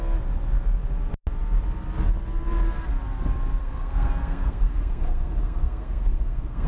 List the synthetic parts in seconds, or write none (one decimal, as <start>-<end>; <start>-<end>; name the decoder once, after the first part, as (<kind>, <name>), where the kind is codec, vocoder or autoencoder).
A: 3.6-6.7 (codec, SNAC)